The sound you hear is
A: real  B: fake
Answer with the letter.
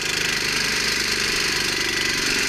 B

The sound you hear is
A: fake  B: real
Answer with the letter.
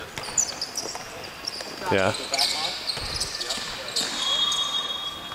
B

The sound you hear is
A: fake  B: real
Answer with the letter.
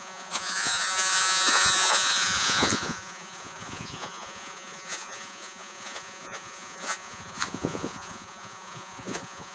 A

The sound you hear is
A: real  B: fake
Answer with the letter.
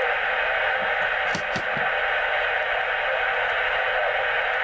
A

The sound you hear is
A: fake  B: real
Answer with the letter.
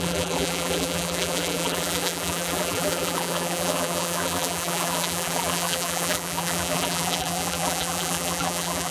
A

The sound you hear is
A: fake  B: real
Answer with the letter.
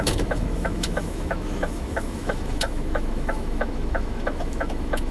A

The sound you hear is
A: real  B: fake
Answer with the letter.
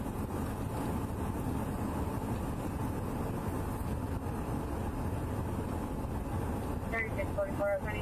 A